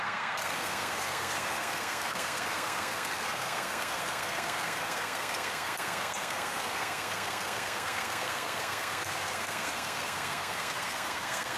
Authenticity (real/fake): fake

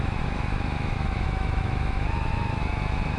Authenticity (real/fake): fake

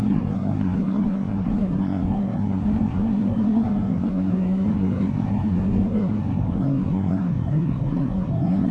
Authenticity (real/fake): fake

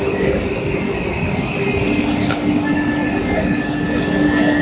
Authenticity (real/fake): fake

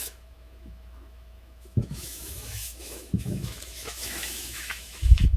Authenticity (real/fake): fake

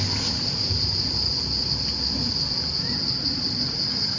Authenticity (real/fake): real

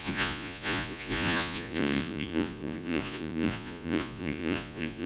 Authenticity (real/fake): fake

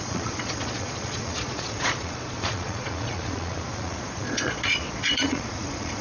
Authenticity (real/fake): fake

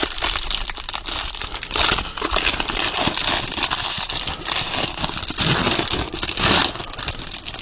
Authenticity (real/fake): real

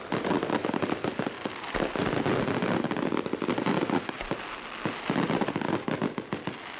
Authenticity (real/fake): real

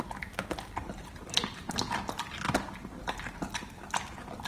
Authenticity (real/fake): real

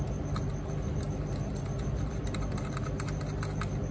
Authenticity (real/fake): real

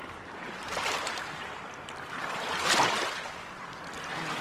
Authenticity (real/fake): real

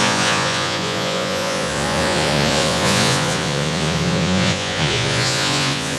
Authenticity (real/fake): fake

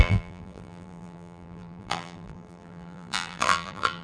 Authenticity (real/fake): fake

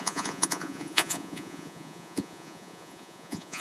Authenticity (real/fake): fake